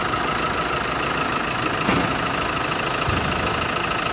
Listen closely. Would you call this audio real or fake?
real